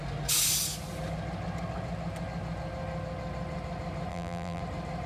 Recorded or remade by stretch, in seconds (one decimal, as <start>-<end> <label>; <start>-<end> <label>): 0.0-4.1 recorded; 4.1-4.6 remade; 4.6-5.1 recorded